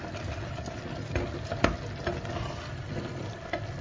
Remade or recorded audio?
recorded